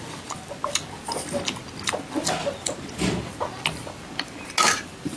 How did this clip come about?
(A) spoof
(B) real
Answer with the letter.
B